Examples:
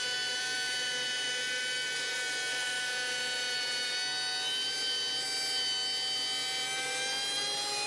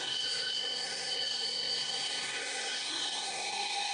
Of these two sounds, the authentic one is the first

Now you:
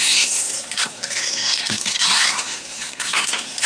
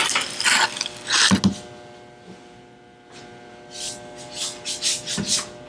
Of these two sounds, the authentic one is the second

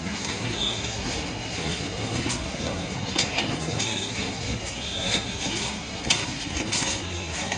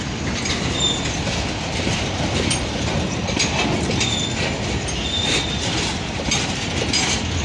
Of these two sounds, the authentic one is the second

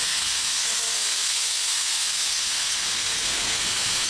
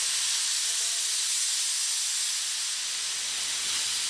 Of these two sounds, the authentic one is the second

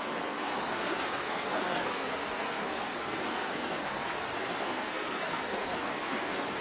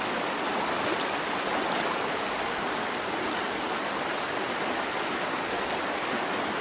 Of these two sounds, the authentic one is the second